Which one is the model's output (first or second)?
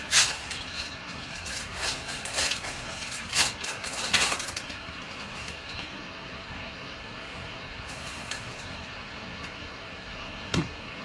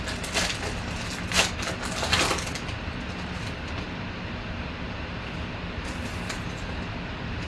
first